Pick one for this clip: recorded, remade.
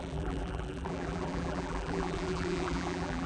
remade